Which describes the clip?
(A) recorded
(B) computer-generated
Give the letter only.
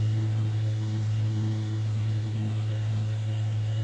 B